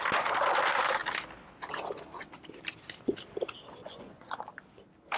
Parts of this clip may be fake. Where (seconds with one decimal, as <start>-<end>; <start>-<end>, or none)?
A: 3.8-4.4